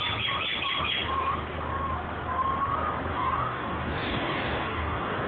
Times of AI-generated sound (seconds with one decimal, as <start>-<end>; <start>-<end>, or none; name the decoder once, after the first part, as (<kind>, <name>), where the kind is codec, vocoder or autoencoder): 3.1-5.3 (codec, DAC)